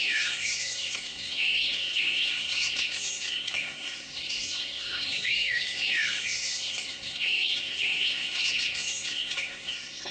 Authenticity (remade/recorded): remade